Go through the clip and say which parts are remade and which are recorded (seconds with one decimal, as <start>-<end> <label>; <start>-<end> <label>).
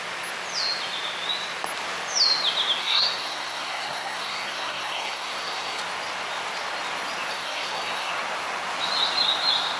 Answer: 0.0-2.8 recorded; 2.8-5.8 remade; 5.8-7.3 recorded; 7.3-8.1 remade; 8.1-9.8 recorded